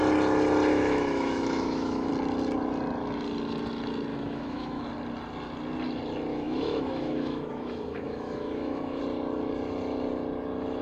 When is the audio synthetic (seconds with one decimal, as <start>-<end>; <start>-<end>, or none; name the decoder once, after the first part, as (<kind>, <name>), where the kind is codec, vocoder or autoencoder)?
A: 0.7-2.1 (autoencoder, DAC-VAE); 4.1-4.8; 6.3-9.0